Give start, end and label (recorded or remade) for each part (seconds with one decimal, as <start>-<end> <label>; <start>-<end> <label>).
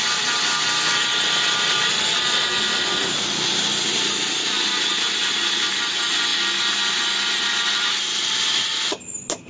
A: 0.0-9.5 recorded